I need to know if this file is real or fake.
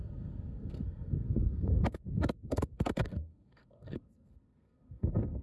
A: fake